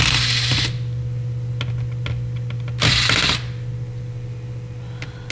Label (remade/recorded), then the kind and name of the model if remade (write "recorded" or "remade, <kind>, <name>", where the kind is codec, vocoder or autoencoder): recorded